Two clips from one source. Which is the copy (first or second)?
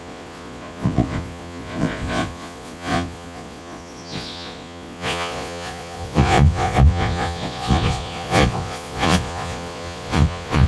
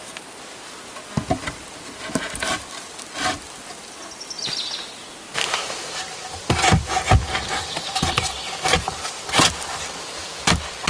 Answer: first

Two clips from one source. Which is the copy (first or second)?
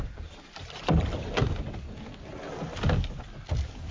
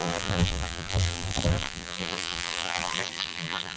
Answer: second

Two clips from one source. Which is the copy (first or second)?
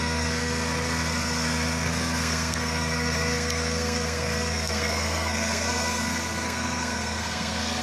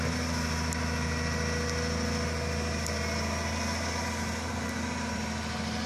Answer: first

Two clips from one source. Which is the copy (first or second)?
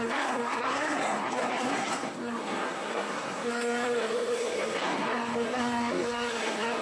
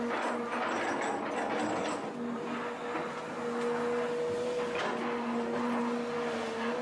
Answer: first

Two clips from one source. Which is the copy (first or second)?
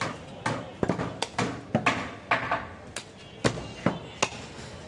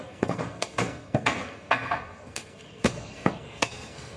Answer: second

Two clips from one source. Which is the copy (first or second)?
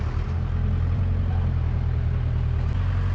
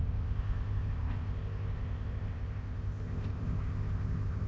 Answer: second